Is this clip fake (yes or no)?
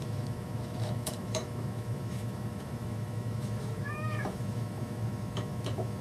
yes